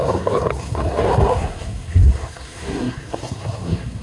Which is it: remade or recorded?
remade